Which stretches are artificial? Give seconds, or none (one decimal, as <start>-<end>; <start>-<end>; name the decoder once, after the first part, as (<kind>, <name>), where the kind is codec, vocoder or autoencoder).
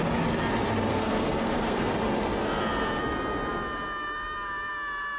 0.9-1.9 (codec, SNAC)